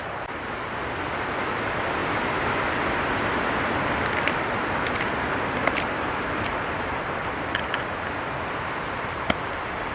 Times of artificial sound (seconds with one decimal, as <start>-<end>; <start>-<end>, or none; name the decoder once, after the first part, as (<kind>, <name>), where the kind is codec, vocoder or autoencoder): none